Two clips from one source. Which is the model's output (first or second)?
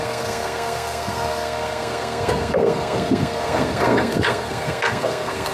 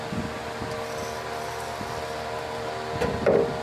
first